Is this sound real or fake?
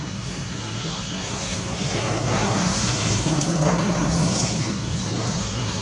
fake